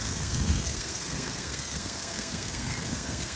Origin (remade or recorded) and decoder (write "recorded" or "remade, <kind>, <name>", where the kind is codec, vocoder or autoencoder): remade, codec, SNAC